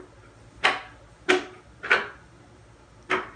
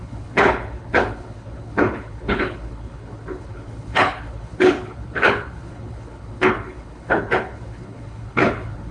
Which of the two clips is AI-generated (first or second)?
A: second